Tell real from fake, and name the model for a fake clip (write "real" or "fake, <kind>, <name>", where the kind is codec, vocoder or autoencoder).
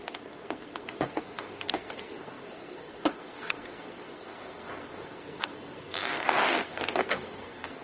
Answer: fake, codec, SNAC